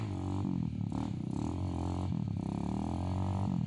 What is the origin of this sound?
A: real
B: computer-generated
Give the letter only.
A